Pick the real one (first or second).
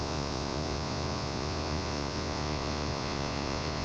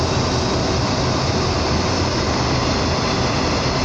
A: second